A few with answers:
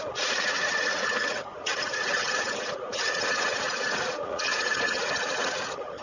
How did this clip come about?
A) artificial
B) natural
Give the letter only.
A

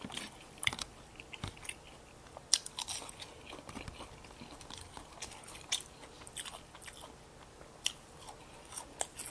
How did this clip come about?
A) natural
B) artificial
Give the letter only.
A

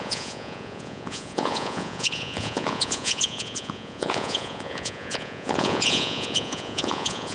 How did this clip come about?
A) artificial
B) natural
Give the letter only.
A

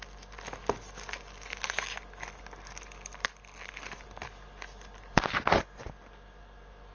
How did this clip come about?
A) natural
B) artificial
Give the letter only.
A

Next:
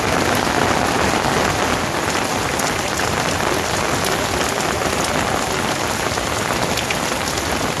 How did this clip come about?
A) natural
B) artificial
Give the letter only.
A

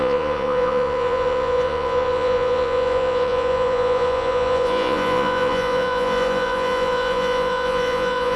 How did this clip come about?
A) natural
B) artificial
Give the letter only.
B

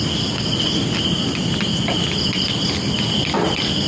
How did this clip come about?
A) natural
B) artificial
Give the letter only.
A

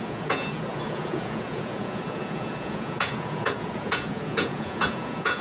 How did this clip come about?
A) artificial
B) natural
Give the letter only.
A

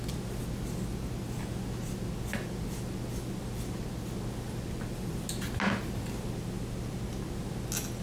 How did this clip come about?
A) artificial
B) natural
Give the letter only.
B